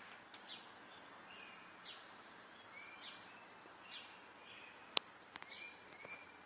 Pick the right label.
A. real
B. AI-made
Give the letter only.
A